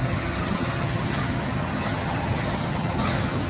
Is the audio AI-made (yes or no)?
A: yes